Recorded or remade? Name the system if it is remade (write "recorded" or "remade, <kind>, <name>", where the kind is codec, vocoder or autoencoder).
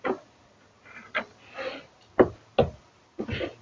recorded